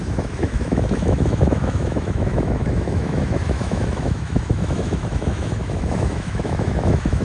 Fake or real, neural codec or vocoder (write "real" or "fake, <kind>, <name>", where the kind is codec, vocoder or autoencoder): fake, autoencoder, DAC-VAE